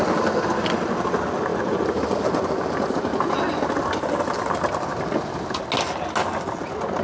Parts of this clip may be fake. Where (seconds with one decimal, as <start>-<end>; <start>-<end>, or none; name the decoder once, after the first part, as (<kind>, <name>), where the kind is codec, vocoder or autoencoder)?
none